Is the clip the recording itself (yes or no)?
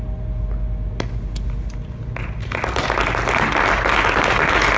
yes